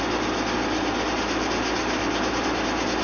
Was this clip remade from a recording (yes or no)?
no